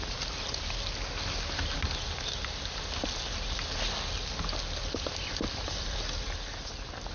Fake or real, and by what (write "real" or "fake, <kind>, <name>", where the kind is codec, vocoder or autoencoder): real